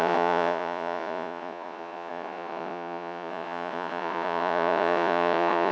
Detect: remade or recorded remade